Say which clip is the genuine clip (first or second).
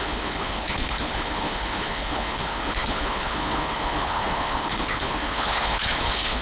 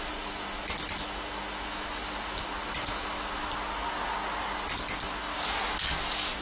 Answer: second